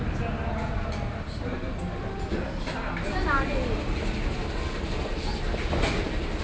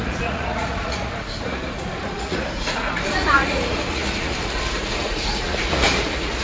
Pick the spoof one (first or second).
second